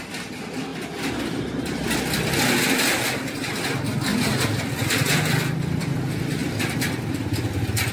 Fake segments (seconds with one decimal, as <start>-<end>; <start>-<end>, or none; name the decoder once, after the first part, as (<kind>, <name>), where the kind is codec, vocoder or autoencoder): none